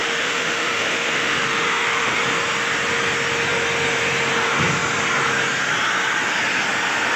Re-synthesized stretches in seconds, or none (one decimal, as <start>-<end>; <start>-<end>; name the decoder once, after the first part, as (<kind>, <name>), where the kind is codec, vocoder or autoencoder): 0.0-2.2 (autoencoder, DAC-VAE)